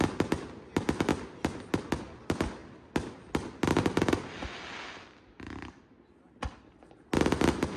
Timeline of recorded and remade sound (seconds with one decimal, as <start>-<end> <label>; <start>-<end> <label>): 0.0-7.8 recorded

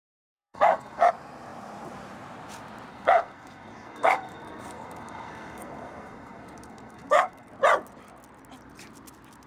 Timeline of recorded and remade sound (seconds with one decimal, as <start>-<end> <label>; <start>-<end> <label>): 0.0-1.1 remade; 1.1-2.9 recorded; 2.9-7.5 remade; 7.5-9.5 recorded

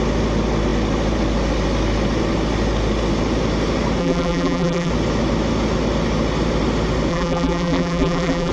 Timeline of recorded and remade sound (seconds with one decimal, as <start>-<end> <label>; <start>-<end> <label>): 0.0-4.0 recorded; 4.0-4.9 remade; 4.9-7.1 recorded; 7.1-8.5 remade

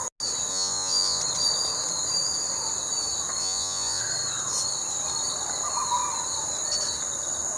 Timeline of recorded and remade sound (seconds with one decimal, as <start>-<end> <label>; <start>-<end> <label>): 0.0-0.5 recorded; 0.5-1.2 remade; 1.2-3.4 recorded; 3.4-4.0 remade; 4.0-7.6 recorded

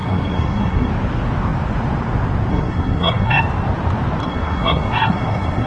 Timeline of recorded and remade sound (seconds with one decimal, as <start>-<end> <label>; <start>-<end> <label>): 0.0-0.9 remade; 0.9-2.5 recorded; 2.5-3.4 remade; 3.4-4.2 recorded; 4.2-5.7 remade

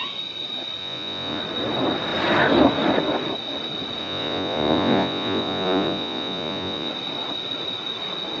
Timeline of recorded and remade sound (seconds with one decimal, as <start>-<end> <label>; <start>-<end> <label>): 0.0-0.8 recorded; 0.8-1.4 remade; 1.4-4.0 recorded; 4.0-6.9 remade; 6.9-8.4 recorded